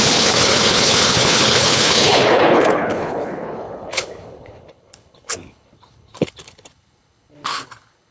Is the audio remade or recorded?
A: remade